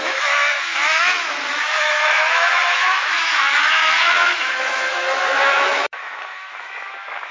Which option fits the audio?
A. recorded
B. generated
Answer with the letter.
B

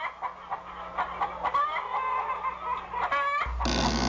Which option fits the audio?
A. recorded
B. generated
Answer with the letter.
A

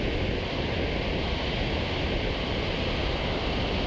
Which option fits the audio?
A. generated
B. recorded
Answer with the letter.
B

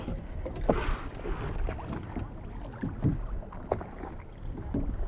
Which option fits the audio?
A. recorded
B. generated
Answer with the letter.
A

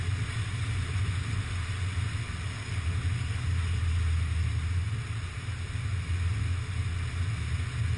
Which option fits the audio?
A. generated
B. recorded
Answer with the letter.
B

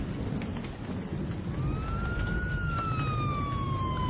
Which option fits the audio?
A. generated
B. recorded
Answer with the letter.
B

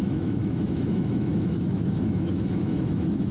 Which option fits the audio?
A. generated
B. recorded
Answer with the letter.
A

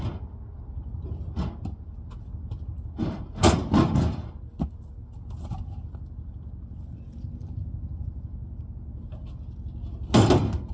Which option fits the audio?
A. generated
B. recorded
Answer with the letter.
B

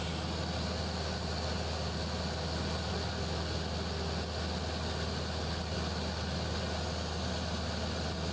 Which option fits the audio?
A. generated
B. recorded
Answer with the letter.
B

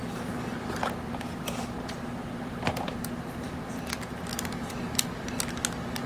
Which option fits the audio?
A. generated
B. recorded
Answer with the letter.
B